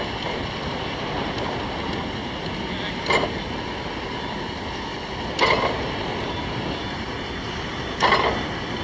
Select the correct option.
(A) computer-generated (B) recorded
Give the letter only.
B